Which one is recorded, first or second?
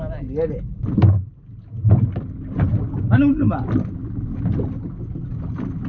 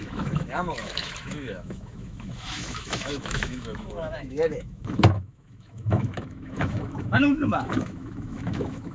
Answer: first